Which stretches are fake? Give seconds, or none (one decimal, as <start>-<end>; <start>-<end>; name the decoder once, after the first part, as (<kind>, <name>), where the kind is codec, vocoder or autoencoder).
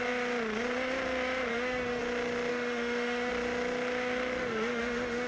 1.5-2.0 (autoencoder, DAC-VAE); 2.5-3.3; 4.4-5.3